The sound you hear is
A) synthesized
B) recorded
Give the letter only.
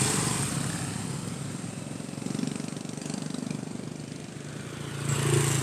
B